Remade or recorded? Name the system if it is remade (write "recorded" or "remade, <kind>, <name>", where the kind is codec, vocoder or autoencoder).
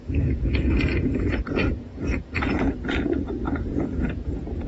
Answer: remade, vocoder, Vocos